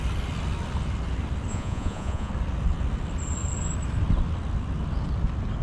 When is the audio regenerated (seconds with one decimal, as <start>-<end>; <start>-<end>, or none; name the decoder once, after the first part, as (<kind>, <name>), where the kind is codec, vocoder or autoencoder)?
1.5-2.3 (vocoder, Vocos)